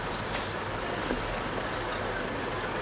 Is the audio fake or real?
real